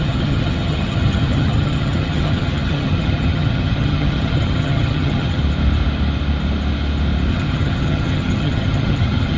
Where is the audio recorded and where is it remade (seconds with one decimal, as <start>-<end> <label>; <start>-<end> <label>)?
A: 0.0-5.4 remade; 5.4-7.3 recorded; 7.3-9.4 remade